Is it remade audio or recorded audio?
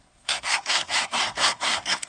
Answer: remade